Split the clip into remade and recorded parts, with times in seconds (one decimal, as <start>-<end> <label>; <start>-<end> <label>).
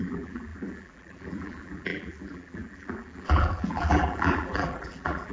0.0-5.3 remade